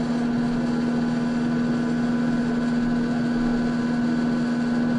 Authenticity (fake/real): real